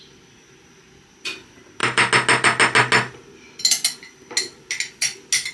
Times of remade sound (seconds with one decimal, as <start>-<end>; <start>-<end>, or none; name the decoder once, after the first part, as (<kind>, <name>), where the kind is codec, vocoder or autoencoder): none

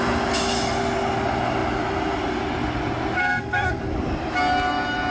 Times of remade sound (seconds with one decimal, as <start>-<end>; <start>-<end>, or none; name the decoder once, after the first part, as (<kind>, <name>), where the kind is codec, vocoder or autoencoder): 3.2-3.8 (codec, SNAC)

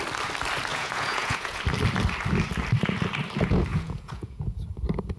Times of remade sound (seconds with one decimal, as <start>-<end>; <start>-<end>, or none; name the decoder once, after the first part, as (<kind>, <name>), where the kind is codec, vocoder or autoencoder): 0.7-1.6 (vocoder, Vocos); 3.7-4.6

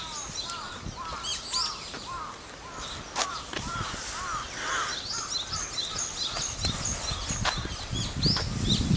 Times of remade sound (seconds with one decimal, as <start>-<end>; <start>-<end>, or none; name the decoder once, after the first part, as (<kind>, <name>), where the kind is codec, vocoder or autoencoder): none

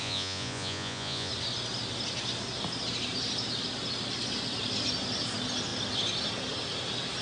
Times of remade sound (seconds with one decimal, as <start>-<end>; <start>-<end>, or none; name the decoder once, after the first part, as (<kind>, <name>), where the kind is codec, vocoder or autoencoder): 0.0-1.3 (vocoder, Vocos)

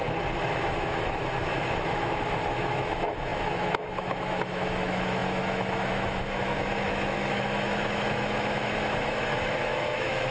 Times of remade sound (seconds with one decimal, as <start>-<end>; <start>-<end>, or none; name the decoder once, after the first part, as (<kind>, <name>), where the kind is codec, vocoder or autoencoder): 0.6-10.3 (autoencoder, DAC-VAE)

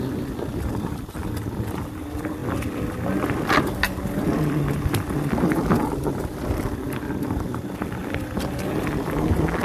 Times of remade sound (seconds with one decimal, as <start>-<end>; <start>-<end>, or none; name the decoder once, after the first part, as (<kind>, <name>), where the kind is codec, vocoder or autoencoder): none